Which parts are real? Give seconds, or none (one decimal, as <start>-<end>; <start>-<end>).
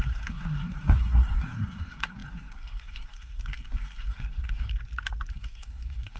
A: 4.7-5.3